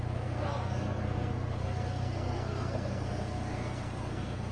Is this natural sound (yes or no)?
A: no